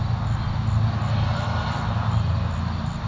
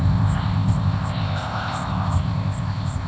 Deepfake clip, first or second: second